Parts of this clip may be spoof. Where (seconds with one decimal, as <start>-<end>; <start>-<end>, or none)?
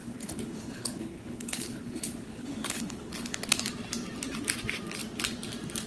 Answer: 0.0-3.4